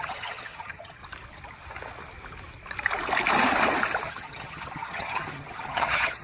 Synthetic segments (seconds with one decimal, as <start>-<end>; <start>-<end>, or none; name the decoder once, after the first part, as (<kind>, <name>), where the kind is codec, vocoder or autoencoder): 0.0-1.0 (vocoder, HiFi-GAN); 4.1-6.2